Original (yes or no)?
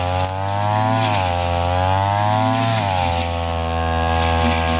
yes